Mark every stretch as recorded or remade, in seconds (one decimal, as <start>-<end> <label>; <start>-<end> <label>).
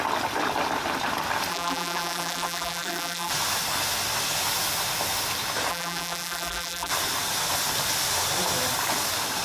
0.0-1.5 recorded; 1.5-3.3 remade; 3.3-5.7 recorded; 5.7-6.9 remade; 6.9-9.4 recorded